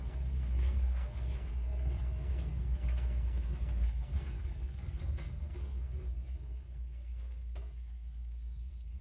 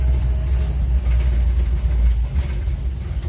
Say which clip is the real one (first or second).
second